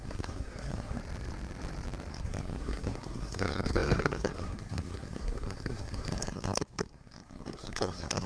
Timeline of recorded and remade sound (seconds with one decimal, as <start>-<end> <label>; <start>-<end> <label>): 0.0-1.0 remade; 1.0-2.1 recorded; 2.1-8.3 remade